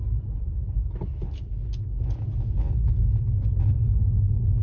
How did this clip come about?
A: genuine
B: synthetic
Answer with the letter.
A